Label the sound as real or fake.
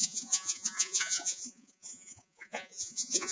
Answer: fake